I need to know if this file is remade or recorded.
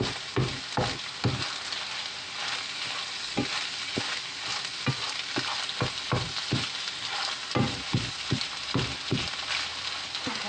recorded